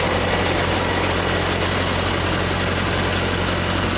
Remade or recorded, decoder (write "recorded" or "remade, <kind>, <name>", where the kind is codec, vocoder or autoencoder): recorded